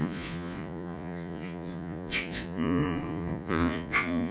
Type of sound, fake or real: fake